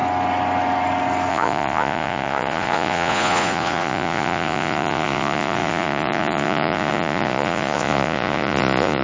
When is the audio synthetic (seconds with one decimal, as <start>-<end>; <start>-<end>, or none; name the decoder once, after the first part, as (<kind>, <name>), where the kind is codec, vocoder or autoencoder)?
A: 1.3-9.0 (vocoder, Vocos)